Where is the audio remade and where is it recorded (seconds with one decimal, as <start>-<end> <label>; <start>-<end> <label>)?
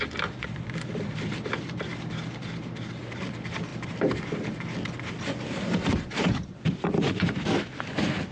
0.0-1.9 remade; 1.9-2.4 recorded; 2.4-8.3 remade